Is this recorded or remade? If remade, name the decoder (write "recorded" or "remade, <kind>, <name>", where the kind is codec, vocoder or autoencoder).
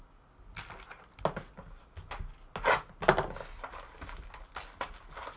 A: recorded